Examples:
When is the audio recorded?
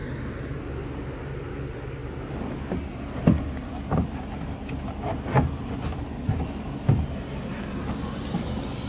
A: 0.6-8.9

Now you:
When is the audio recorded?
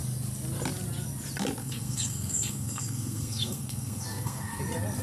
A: 0.0-1.6; 4.6-5.0